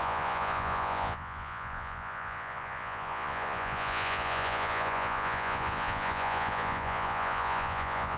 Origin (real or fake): fake